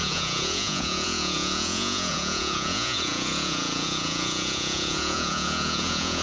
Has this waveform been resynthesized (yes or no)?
yes